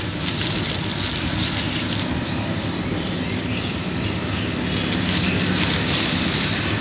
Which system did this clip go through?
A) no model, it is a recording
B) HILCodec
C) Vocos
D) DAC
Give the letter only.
A